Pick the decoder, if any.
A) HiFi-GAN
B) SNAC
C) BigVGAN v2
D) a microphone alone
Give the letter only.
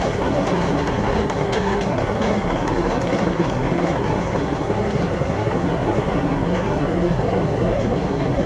B